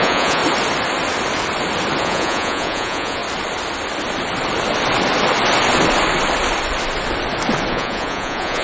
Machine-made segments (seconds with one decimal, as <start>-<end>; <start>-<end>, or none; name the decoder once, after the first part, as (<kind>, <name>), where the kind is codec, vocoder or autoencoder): 0.0-0.4 (vocoder, Vocos); 2.0-3.2; 7.7-8.6